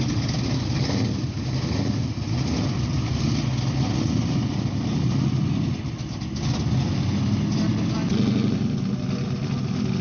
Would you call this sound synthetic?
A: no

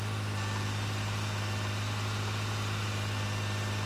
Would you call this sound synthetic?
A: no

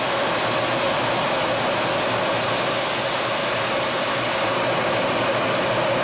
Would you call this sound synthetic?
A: no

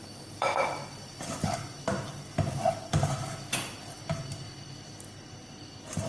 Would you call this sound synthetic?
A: yes